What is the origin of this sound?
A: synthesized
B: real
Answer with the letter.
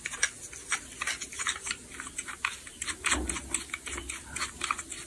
B